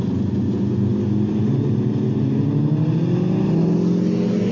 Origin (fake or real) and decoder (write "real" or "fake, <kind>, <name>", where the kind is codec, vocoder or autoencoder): real